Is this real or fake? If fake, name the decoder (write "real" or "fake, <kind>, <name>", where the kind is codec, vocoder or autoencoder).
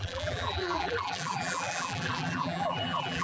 fake, vocoder, BigVGAN v2